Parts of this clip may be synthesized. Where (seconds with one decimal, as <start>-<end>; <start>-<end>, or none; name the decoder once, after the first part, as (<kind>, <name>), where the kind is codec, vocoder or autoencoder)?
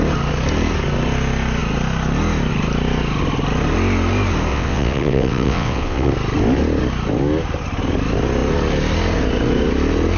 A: 4.5-6.1 (vocoder, WaveNeXt)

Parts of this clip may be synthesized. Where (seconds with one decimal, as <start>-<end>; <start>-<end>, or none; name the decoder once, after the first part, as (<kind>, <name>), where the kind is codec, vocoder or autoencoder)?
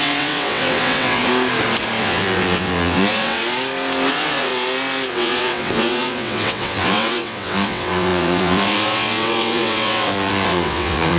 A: 0.0-1.2 (vocoder, WaveNeXt); 2.0-3.4; 4.1-4.5; 5.1-11.2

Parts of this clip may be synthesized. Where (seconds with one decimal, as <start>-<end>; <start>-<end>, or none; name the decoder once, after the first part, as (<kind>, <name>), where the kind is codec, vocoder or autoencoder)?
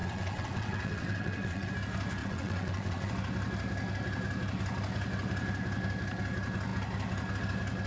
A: 0.0-1.7 (vocoder, WaveNeXt); 2.2-3.1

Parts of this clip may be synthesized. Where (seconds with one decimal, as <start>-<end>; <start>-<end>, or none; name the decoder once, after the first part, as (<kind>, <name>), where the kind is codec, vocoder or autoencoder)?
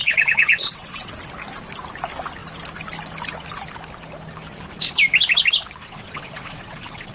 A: 0.0-1.1 (vocoder, WaveNeXt); 5.8-7.1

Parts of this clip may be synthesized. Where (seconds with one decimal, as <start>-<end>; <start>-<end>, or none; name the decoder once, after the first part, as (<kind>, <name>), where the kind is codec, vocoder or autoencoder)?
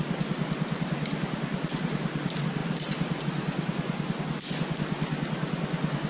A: none